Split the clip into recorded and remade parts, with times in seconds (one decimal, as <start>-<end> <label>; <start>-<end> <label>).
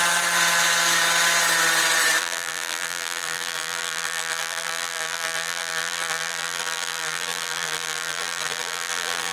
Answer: 0.0-2.2 recorded; 2.2-9.3 remade